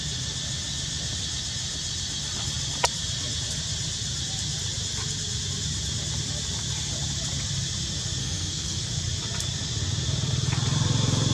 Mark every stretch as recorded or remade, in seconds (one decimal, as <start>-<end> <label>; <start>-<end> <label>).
0.0-8.2 recorded; 8.2-8.9 remade; 8.9-11.3 recorded